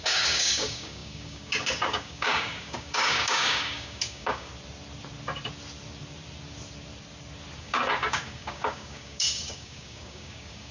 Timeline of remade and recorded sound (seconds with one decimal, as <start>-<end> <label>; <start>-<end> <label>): 0.0-4.5 remade; 4.5-7.6 recorded; 7.6-10.7 remade

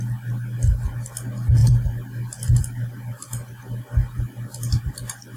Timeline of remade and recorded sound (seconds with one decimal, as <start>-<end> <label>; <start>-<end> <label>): 0.0-5.4 recorded

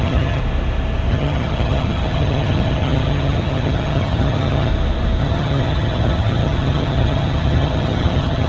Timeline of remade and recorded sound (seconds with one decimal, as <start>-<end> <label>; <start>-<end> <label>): 0.0-0.4 remade; 0.4-1.1 recorded; 1.1-4.7 remade; 4.7-5.2 recorded; 5.2-8.5 remade

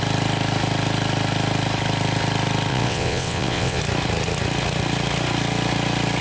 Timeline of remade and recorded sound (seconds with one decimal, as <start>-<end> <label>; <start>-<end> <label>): 0.0-2.7 recorded; 2.7-3.8 remade; 3.8-6.2 recorded

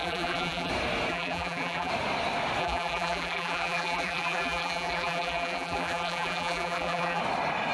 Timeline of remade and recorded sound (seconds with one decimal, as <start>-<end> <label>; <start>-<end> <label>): 0.0-0.7 remade; 0.7-1.1 recorded; 1.1-1.9 remade; 1.9-2.6 recorded; 2.6-7.2 remade; 7.2-7.7 recorded

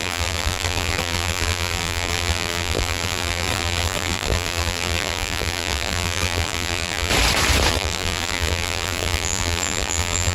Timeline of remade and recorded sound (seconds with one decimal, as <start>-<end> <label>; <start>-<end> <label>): 0.0-7.1 remade; 7.1-7.7 recorded; 7.7-10.3 remade

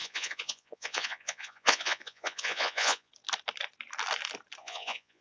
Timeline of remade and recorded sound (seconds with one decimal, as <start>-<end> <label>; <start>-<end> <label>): 0.0-3.1 remade; 3.1-4.6 recorded; 4.6-5.2 remade